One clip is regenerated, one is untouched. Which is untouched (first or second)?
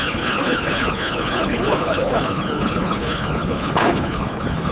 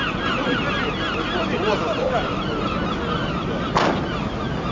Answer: second